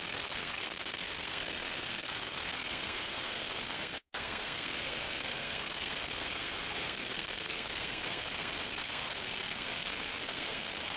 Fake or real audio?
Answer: fake